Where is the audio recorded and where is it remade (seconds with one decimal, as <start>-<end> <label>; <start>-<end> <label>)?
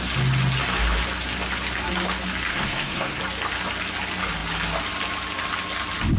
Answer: 0.0-2.5 recorded; 2.5-3.2 remade; 3.2-6.2 recorded